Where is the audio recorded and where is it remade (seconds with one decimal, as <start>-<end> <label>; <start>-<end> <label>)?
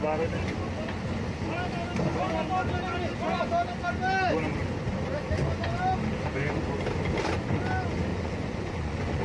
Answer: 0.0-8.1 recorded; 8.1-9.2 remade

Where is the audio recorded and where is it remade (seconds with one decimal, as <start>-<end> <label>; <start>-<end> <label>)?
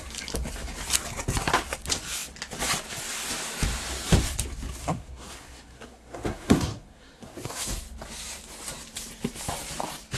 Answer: 0.0-4.8 recorded; 4.8-7.8 remade; 7.8-10.2 recorded